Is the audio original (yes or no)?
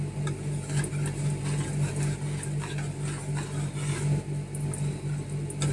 yes